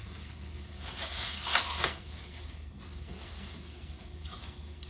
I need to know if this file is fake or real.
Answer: fake